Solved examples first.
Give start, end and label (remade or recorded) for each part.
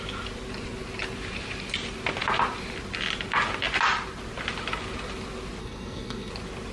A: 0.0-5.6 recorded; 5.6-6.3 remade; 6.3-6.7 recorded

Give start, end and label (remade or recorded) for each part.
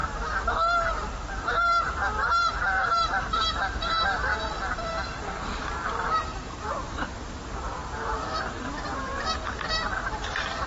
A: 0.0-4.3 remade; 4.3-5.4 recorded; 5.4-10.7 remade